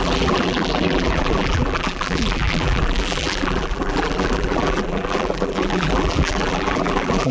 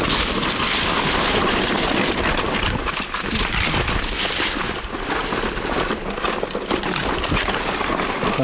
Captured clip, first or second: second